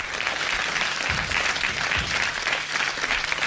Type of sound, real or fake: real